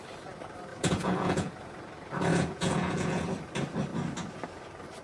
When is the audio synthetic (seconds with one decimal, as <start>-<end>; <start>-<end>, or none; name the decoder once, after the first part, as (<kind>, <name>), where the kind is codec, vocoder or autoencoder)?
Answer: 0.7-1.5 (vocoder, Vocos); 2.3-3.2